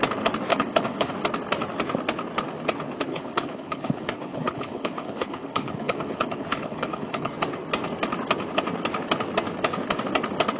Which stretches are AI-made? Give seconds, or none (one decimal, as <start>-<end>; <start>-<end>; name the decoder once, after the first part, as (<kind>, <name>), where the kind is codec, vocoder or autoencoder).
0.5-1.1 (codec, HILCodec); 3.1-7.3